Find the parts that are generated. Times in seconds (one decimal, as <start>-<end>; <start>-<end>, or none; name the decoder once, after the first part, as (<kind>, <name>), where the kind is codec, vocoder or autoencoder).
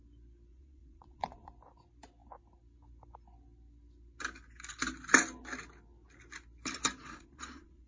0.5-1.5 (vocoder, Vocos); 7.0-7.9